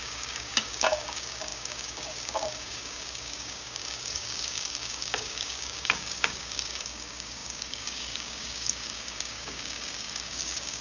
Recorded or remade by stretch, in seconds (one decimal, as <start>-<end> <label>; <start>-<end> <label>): 0.0-10.8 remade